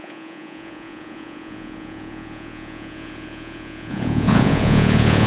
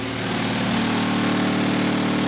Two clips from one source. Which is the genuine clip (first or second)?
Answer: second